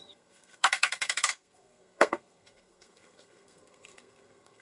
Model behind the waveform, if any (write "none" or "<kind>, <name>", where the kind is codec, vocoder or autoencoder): codec, SNAC